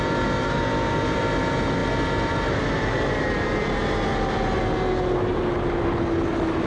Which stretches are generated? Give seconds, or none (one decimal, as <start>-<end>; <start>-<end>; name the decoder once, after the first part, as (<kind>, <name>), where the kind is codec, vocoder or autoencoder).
none